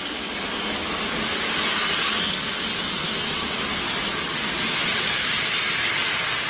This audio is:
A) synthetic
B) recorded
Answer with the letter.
B